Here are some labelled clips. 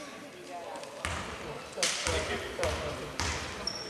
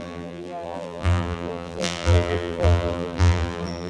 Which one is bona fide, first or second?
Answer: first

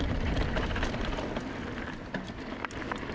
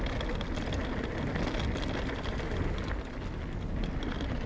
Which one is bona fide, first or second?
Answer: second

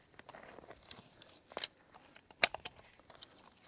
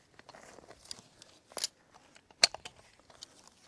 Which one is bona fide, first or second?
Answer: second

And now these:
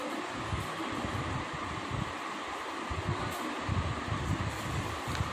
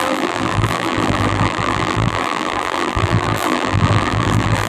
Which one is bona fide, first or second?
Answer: first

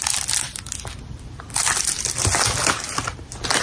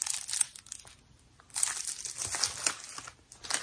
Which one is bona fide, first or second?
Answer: second